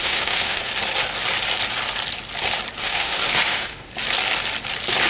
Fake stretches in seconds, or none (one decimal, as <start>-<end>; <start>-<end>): 0.0-0.7; 2.8-3.9